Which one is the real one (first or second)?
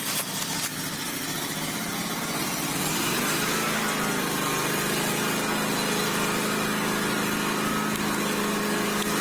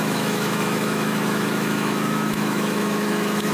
first